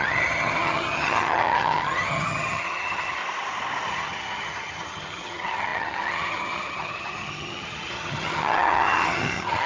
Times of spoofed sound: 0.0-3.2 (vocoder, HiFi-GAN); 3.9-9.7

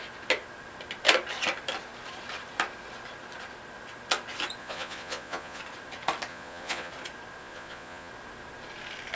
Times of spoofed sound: 4.6-5.6 (vocoder, Vocos); 6.3-6.9; 7.4-8.1